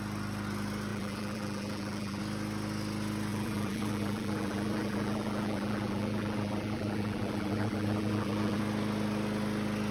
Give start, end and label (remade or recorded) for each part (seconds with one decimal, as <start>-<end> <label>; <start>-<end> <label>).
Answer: 0.0-0.9 recorded; 0.9-2.2 remade; 2.2-3.3 recorded; 3.3-8.6 remade; 8.6-9.9 recorded

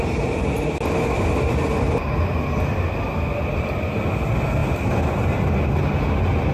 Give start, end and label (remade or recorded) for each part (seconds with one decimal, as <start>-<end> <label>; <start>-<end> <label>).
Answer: 0.0-6.5 recorded

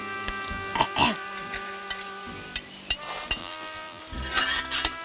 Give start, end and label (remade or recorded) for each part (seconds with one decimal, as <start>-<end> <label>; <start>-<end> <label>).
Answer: 0.0-3.4 recorded; 3.4-4.0 remade; 4.0-5.0 recorded

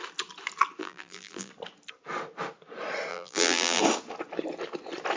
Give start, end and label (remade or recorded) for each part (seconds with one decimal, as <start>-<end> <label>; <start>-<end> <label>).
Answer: 0.0-0.8 recorded; 0.8-1.5 remade; 1.5-3.1 recorded; 3.1-3.8 remade; 3.8-5.2 recorded

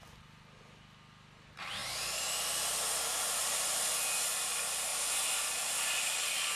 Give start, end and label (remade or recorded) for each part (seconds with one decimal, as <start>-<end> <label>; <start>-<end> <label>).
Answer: 0.0-6.6 recorded